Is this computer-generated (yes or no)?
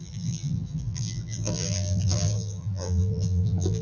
yes